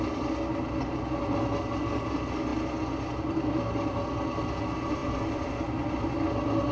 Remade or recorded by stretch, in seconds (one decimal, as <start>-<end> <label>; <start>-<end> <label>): 0.0-6.7 recorded